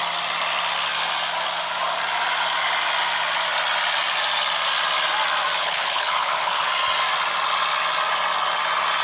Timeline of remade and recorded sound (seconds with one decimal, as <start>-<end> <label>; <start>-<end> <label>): 0.0-5.6 recorded; 5.6-6.7 remade; 6.7-9.0 recorded